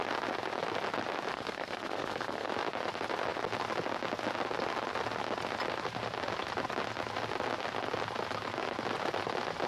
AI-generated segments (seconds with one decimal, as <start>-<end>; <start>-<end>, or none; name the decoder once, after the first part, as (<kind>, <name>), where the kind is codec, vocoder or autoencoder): 1.3-2.5 (codec, SNAC)